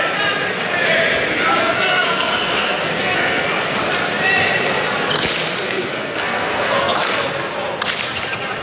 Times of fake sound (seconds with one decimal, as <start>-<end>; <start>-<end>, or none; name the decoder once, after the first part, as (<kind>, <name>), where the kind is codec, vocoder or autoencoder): 1.6-3.8 (codec, SNAC); 5.6-7.3